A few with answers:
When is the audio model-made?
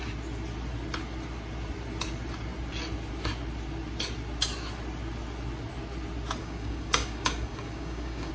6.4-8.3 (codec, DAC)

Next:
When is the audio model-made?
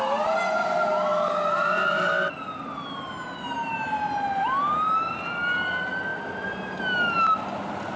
none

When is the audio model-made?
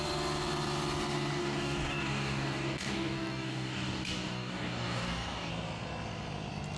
1.4-5.5 (codec, DAC)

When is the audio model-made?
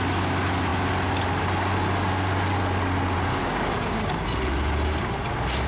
3.3-4.1 (codec, DAC)